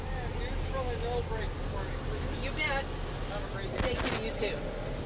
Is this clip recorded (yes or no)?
yes